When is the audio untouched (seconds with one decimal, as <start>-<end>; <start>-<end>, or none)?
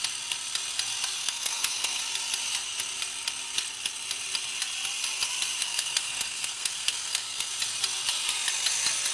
0.0-1.2; 2.0-5.6; 7.5-9.1